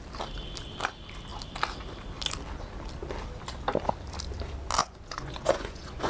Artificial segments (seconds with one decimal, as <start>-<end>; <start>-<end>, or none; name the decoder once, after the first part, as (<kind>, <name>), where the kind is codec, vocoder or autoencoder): 4.8-6.1 (vocoder, Vocos)